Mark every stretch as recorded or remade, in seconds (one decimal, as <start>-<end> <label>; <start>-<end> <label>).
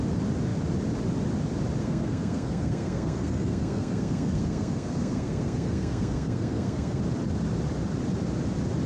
0.0-1.8 recorded; 1.8-7.0 remade; 7.0-8.9 recorded